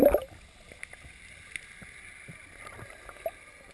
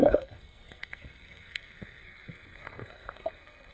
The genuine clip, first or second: first